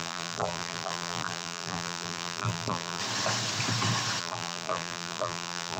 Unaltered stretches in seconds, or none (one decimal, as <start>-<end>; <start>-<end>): 3.0-4.2